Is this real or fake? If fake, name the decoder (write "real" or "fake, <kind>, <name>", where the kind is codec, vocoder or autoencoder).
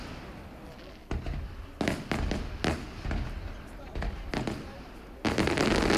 real